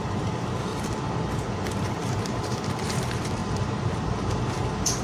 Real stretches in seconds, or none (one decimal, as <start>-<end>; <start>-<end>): 0.7-1.3